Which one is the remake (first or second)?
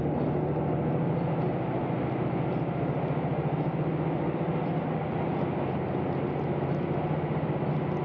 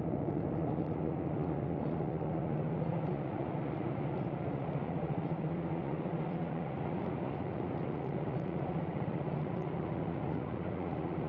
second